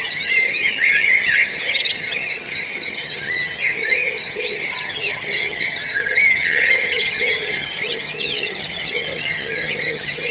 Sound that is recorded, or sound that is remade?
remade